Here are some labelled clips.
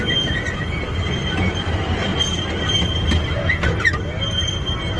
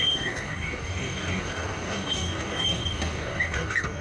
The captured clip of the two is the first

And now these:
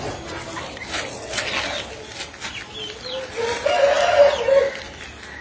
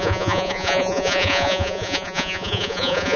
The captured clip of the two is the first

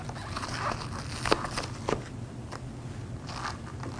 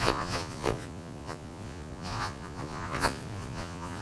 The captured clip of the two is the first